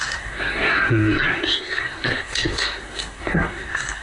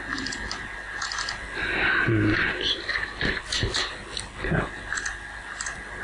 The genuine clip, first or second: second